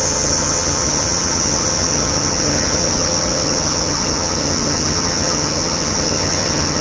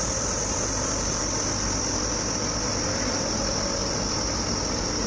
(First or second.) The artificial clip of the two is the first